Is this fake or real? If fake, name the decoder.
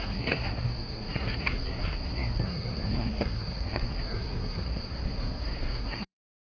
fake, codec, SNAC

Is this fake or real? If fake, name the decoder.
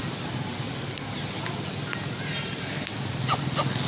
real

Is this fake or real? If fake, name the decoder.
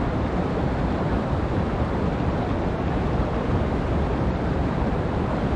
real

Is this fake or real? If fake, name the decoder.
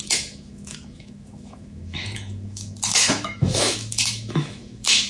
fake, autoencoder, DAC-VAE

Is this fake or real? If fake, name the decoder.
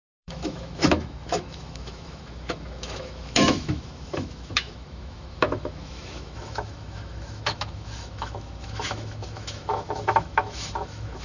fake, autoencoder, DAC-VAE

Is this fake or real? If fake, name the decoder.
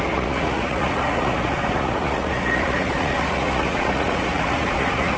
fake, vocoder, Vocos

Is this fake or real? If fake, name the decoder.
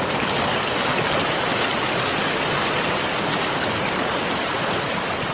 real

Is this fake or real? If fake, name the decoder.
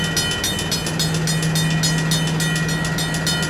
real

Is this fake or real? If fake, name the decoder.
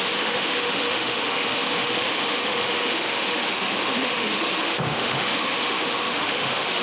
fake, autoencoder, DAC-VAE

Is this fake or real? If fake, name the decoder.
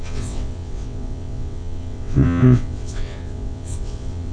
fake, vocoder, WaveNeXt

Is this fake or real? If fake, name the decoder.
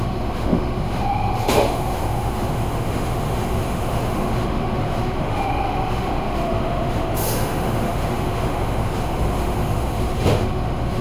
fake, autoencoder, DAC-VAE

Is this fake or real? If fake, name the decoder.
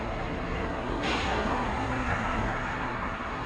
fake, codec, SNAC